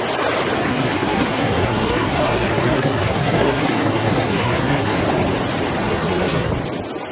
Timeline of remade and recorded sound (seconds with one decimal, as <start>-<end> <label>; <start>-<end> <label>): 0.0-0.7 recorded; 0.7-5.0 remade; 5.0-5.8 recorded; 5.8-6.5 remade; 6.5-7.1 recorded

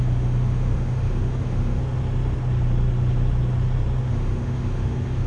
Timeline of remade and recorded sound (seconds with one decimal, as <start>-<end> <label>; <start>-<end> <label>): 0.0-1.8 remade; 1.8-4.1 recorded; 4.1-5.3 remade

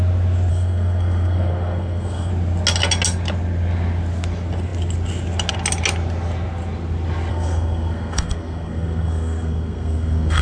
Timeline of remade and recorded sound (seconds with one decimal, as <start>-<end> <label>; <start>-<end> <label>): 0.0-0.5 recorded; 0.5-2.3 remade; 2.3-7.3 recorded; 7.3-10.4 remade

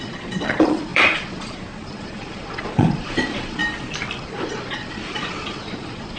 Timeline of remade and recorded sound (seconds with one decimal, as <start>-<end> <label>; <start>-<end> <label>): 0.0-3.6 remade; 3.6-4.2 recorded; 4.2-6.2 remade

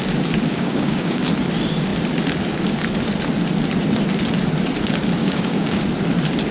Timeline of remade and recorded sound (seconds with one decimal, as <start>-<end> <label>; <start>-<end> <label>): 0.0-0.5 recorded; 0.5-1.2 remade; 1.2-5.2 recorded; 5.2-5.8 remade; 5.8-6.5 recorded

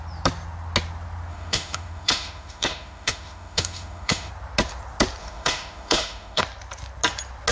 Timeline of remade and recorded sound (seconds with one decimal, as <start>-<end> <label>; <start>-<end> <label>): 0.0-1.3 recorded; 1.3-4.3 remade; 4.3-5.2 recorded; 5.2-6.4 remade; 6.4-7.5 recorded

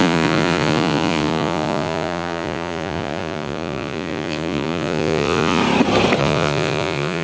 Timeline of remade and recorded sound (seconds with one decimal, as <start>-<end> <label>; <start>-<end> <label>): 0.0-5.6 remade; 5.6-6.2 recorded; 6.2-7.2 remade